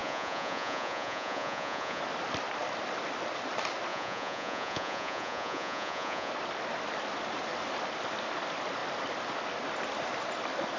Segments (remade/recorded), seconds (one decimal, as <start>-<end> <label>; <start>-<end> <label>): 0.0-2.0 remade; 2.0-3.9 recorded; 3.9-6.3 remade; 6.3-10.8 recorded